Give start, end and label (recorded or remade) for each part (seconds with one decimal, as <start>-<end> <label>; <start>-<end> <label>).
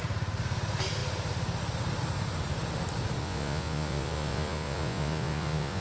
0.0-3.2 recorded; 3.2-5.8 remade